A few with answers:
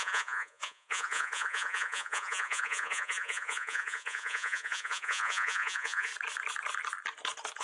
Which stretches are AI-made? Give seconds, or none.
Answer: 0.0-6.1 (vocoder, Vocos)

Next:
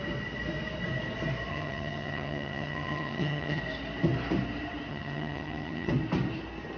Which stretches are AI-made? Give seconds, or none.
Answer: 1.5-3.6 (vocoder, HiFi-GAN); 4.9-5.9

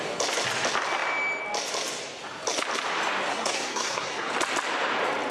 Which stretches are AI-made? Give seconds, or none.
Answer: 3.3-4.3 (codec, SNAC)

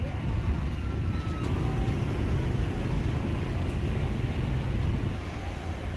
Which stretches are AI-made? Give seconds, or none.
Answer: 3.3-4.3 (codec, DAC)

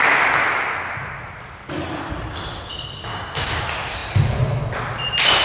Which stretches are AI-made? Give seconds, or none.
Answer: 3.1-3.6 (codec, DAC)

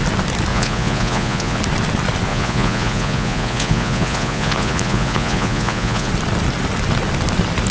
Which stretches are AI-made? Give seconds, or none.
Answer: 0.5-1.6 (vocoder, Vocos); 2.3-6.1

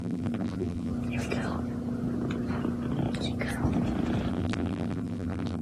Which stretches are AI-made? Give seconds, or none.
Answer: 0.0-0.9 (vocoder, BigVGAN v2); 4.3-5.6

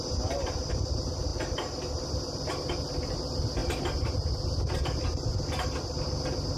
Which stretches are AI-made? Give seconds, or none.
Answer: none